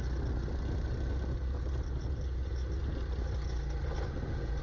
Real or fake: real